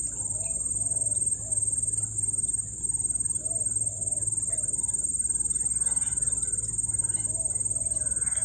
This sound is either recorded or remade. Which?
recorded